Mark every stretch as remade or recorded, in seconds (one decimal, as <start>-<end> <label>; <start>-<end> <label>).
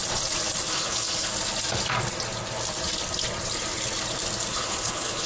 0.0-0.7 recorded; 0.7-1.3 remade; 1.3-4.5 recorded; 4.5-5.3 remade